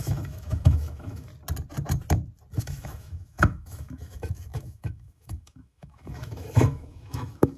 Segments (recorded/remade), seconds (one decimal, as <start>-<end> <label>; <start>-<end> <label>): 0.0-1.3 remade; 1.3-2.6 recorded; 2.6-7.6 remade